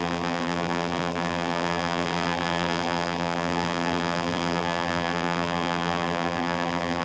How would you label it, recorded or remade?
remade